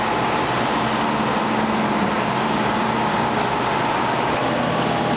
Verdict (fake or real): real